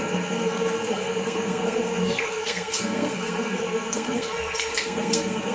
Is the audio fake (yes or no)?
yes